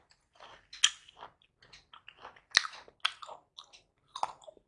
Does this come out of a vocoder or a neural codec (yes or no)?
no